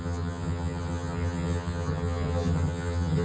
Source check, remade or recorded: remade